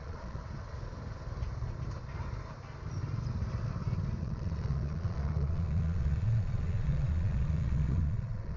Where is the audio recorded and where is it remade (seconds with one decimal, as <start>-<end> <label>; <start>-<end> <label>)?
0.0-0.4 remade; 0.4-4.2 recorded; 4.2-8.6 remade